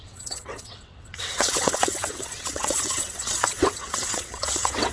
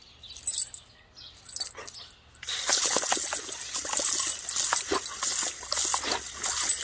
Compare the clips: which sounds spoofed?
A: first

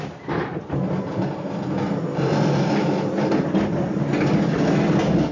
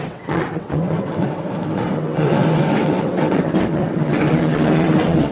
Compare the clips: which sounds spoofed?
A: second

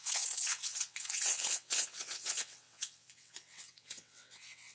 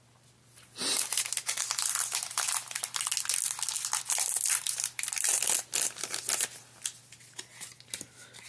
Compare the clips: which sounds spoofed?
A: first